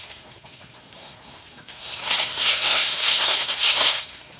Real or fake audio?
fake